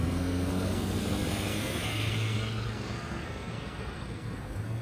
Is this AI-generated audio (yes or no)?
yes